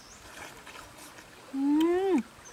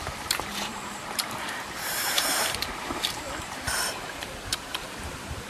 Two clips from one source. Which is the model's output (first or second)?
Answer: second